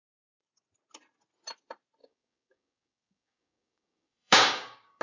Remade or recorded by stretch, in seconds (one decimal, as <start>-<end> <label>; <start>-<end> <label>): 0.0-2.0 recorded; 2.0-5.0 remade